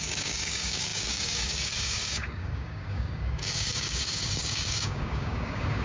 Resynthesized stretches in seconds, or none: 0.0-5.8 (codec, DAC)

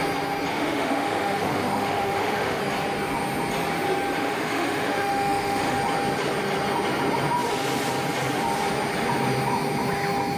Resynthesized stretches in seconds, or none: 0.5-2.6 (autoencoder, DAC-VAE); 4.2-5.8